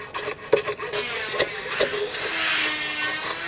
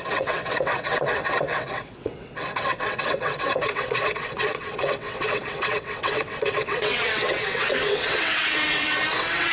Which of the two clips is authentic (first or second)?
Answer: first